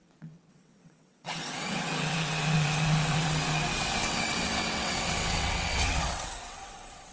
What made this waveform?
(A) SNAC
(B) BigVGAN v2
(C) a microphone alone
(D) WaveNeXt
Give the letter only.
D